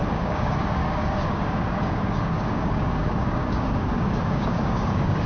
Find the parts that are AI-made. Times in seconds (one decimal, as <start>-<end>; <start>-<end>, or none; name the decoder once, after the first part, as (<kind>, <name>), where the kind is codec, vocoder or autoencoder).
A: 0.0-5.3 (codec, DAC)